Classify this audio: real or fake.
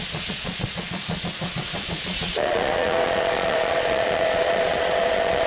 fake